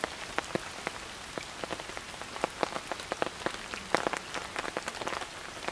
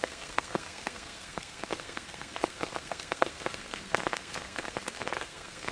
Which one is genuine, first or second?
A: first